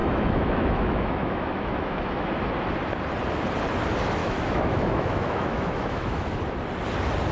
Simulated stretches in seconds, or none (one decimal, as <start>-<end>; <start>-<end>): 0.0-2.3; 4.2-6.4